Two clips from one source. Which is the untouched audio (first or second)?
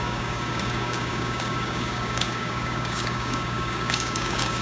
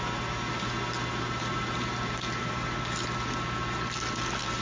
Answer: second